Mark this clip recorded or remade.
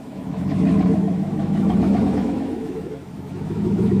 remade